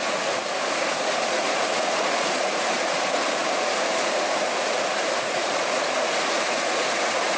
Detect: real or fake fake